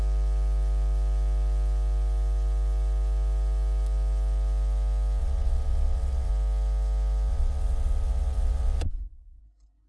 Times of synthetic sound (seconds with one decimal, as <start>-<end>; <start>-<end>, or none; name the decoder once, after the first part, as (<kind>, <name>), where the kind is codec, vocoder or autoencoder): 5.2-6.3 (vocoder, WaveNeXt); 7.3-9.4